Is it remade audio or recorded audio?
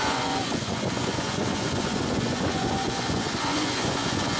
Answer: remade